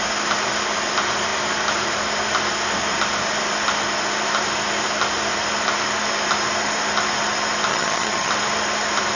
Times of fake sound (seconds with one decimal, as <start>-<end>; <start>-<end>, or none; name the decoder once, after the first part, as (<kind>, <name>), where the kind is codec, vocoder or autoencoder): 7.7-8.3 (vocoder, HiFi-GAN)